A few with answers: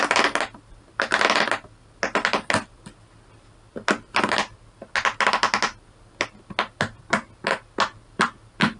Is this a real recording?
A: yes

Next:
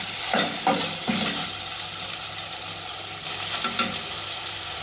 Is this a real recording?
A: yes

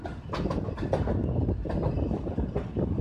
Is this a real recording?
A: yes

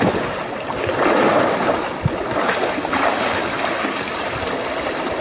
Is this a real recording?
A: yes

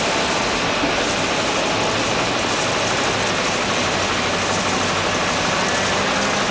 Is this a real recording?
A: yes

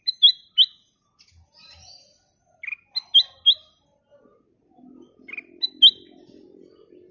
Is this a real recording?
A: yes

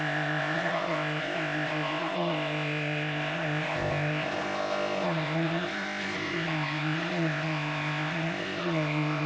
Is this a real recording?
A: no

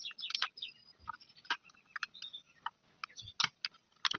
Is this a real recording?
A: yes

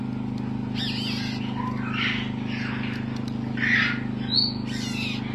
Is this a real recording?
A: yes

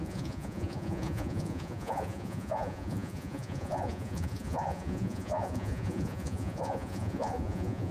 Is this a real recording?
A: no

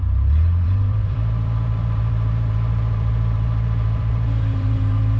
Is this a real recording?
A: no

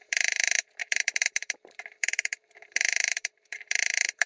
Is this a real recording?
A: no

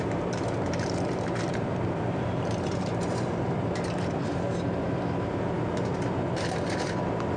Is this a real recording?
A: no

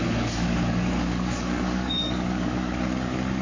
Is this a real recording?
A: no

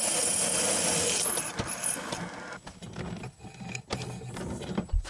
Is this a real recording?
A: yes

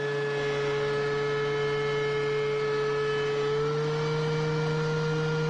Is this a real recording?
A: yes